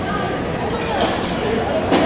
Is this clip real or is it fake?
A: real